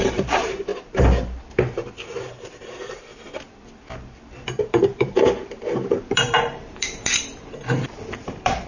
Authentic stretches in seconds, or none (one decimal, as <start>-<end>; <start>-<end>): 0.7-2.3; 3.1-4.6; 7.3-8.0